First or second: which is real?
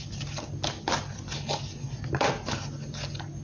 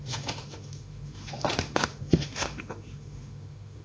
first